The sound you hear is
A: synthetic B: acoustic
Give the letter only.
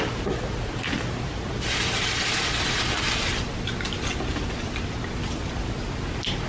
B